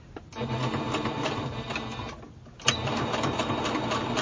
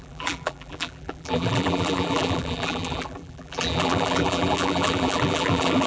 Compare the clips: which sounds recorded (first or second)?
first